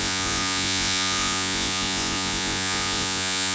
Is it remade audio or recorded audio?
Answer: remade